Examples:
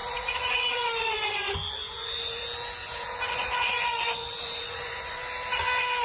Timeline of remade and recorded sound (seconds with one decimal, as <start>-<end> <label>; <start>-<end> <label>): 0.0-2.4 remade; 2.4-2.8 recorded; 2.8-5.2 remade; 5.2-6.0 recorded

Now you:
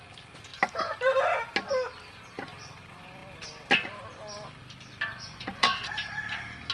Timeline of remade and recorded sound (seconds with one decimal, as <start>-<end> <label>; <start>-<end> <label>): 0.0-5.1 recorded; 5.1-5.9 remade; 5.9-6.7 recorded

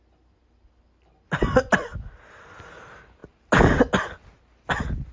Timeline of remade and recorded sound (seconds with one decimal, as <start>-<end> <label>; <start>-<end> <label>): 0.0-5.1 recorded

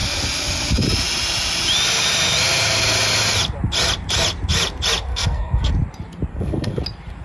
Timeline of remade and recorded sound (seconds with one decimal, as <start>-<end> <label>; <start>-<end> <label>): 0.0-5.1 recorded; 5.1-5.7 remade; 5.7-6.3 recorded; 6.3-6.8 remade; 6.8-7.2 recorded

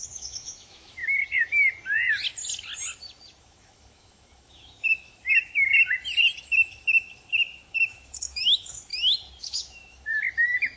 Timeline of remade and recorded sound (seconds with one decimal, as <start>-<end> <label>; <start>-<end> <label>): 0.0-1.0 remade; 1.0-3.4 recorded; 3.4-5.7 remade; 5.7-6.4 recorded; 6.4-8.9 remade; 8.9-9.4 recorded; 9.4-10.1 remade; 10.1-10.8 recorded

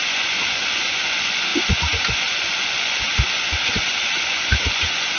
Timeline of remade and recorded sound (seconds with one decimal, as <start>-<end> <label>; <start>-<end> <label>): 0.0-5.2 remade

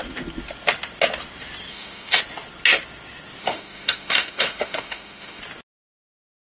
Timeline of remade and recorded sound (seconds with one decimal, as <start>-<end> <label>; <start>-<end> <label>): 0.0-1.7 recorded; 1.7-2.2 remade; 2.2-3.4 recorded; 3.4-5.4 remade; 5.4-6.6 recorded